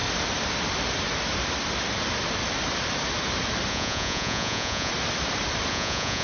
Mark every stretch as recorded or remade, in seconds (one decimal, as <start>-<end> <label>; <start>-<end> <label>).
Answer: 0.0-3.7 recorded; 3.7-4.9 remade; 4.9-5.7 recorded; 5.7-6.2 remade